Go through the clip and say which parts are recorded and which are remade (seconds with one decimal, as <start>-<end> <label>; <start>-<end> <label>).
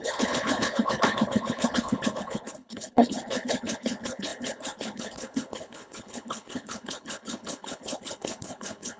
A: 0.0-9.0 remade